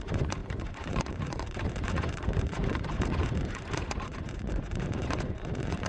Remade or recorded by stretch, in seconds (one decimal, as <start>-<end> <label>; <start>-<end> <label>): 0.0-5.9 remade